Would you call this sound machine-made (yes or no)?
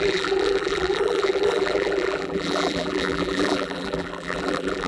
yes